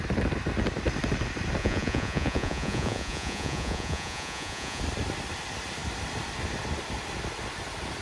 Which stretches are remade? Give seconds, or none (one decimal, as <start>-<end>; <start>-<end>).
1.6-4.8